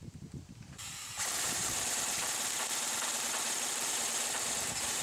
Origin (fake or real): fake